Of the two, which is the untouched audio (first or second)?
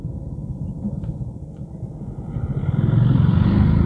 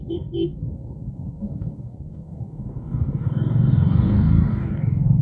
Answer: first